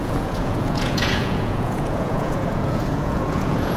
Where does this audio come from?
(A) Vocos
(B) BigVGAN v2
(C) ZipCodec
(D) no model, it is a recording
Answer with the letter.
A